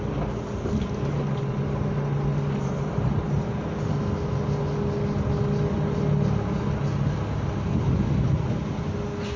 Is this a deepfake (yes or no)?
no